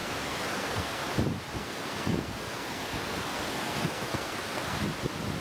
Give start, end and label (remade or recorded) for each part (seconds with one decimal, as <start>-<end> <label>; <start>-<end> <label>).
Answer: 0.0-1.1 remade; 1.1-1.6 recorded; 1.6-4.8 remade; 4.8-5.4 recorded

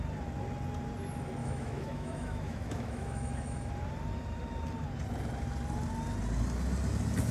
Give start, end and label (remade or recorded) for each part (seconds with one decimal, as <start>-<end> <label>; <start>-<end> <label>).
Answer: 0.0-1.4 recorded; 1.4-3.7 remade; 3.7-7.3 recorded

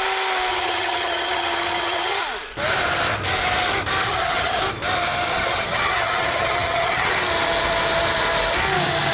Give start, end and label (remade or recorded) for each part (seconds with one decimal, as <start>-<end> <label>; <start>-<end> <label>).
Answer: 0.0-0.5 recorded; 0.5-2.2 remade; 2.2-4.0 recorded; 4.0-4.6 remade; 4.6-5.3 recorded; 5.3-7.1 remade; 7.1-9.1 recorded